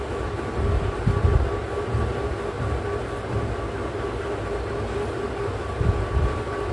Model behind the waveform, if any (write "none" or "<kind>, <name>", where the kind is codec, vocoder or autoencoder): none